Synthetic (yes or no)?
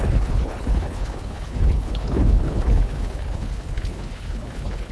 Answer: yes